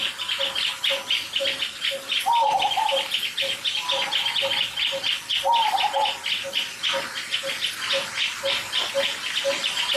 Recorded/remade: recorded